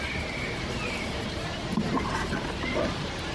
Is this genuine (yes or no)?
no